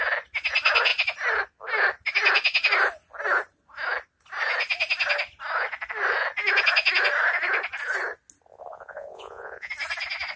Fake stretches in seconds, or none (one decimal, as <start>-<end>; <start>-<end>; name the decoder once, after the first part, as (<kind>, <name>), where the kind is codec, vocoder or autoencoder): 8.5-9.7 (vocoder, Vocos)